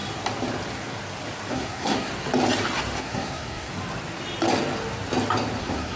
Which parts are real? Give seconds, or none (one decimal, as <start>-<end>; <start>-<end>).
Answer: 0.0-1.5; 2.1-3.0; 3.7-5.6